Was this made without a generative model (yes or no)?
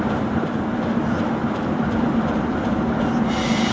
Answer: yes